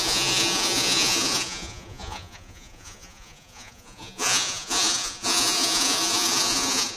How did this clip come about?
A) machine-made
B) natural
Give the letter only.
A